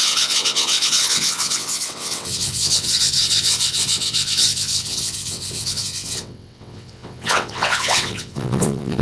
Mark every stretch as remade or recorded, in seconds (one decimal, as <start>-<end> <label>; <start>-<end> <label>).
0.0-9.0 remade